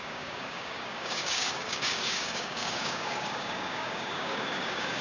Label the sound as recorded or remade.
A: remade